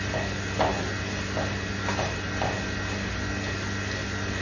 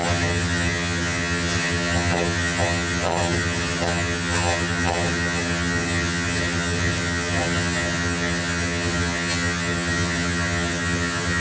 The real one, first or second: first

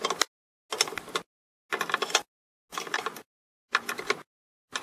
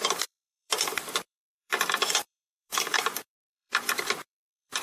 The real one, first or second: first